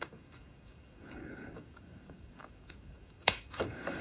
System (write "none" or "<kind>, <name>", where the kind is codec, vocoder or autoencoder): codec, DAC